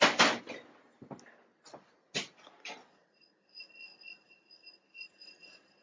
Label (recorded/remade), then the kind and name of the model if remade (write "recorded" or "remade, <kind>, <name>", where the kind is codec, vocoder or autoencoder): recorded